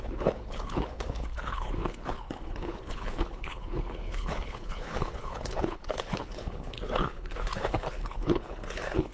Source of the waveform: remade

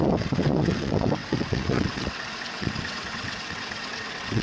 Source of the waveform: remade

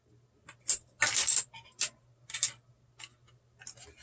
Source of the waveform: recorded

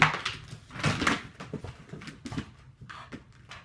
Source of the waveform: recorded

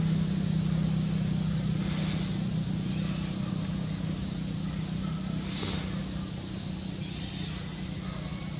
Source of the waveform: recorded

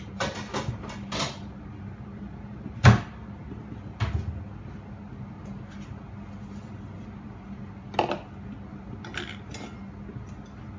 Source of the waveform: recorded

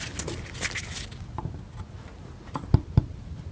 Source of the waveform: recorded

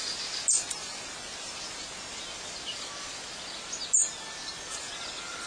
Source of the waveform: recorded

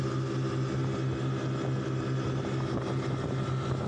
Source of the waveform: recorded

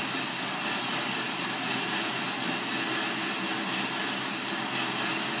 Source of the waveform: recorded